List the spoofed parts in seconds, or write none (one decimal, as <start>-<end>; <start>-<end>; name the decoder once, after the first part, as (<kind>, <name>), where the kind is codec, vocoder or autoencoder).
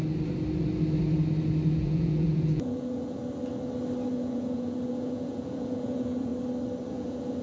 1.7-3.2 (vocoder, Vocos); 4.1-6.3; 6.9-7.4